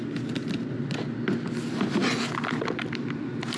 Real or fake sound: real